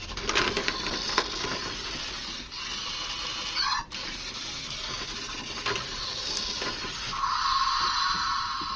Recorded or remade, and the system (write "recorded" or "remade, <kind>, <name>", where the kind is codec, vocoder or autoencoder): remade, vocoder, BigVGAN v2